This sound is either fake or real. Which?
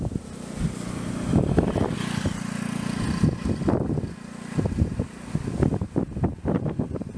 real